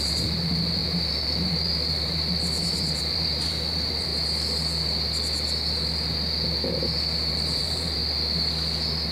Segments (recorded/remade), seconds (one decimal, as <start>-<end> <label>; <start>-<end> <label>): 0.0-4.1 remade; 4.1-7.3 recorded; 7.3-8.0 remade; 8.0-9.1 recorded